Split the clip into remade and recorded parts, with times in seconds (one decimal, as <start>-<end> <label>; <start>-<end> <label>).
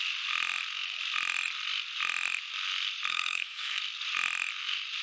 0.0-3.1 recorded; 3.1-3.8 remade; 3.8-5.0 recorded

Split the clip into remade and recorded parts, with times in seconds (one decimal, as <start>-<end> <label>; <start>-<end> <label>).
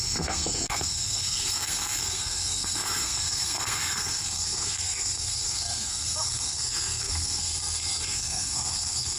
0.0-9.2 remade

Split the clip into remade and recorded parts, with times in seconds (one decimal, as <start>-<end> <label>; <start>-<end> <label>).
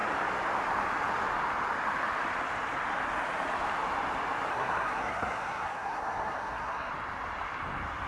0.0-4.5 recorded; 4.5-6.9 remade; 6.9-8.1 recorded